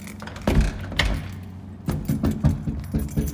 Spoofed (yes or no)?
no